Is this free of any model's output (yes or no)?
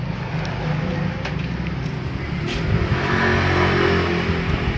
yes